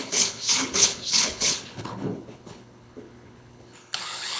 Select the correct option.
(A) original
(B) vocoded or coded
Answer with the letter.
B